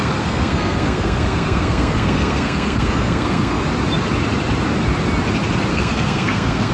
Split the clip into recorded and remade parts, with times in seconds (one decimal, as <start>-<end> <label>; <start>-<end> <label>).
0.0-3.6 remade; 3.6-5.7 recorded; 5.7-6.7 remade